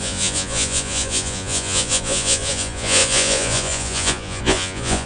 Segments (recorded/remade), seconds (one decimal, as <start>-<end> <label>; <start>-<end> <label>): 0.0-5.1 remade